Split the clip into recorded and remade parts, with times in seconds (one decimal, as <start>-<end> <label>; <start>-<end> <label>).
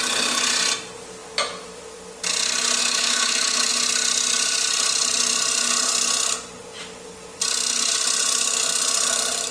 0.0-2.8 recorded; 2.8-3.7 remade; 3.7-9.5 recorded